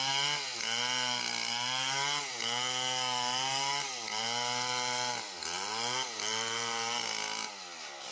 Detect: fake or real real